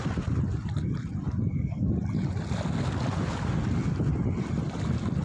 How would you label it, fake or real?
real